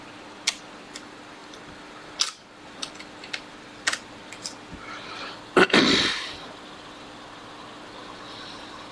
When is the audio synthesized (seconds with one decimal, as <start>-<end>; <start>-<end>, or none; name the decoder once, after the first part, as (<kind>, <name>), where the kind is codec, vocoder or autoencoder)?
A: 0.0-8.9 (vocoder, BigVGAN v2)